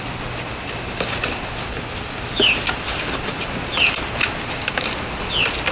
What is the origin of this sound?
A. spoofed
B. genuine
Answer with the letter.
B